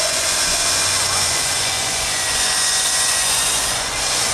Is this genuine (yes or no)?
no